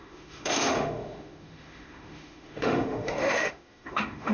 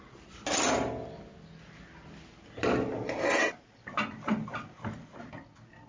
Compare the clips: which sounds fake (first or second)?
first